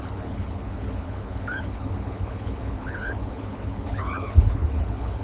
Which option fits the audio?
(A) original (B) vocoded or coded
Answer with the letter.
B